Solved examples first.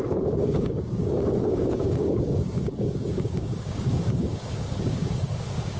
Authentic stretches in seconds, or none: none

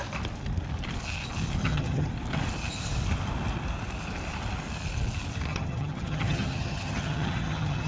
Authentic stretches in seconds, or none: 0.0-1.6; 2.1-5.5

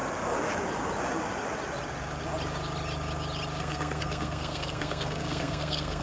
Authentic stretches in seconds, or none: 0.0-3.6

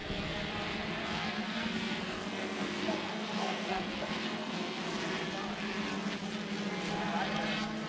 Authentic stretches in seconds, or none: 0.5-1.0; 4.8-7.9